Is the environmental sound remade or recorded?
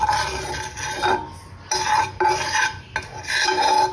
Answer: recorded